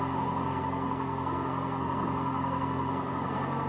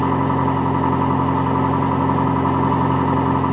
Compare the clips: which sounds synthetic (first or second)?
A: first